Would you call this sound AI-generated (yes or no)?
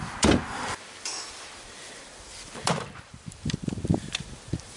yes